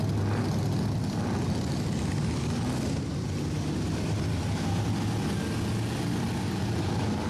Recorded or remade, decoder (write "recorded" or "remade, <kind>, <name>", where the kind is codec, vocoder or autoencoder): recorded